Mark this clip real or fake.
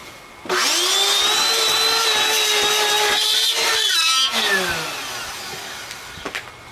real